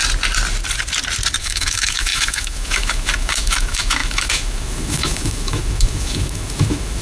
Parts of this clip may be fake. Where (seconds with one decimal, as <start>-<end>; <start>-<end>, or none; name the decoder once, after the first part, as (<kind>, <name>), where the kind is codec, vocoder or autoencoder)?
1.4-7.0 (autoencoder, DAC-VAE)